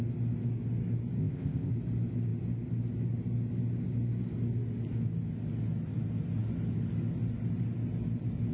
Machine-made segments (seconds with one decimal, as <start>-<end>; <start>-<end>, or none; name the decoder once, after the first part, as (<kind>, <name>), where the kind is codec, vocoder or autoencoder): 1.2-1.7 (codec, ZipCodec)